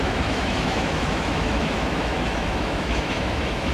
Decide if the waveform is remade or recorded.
remade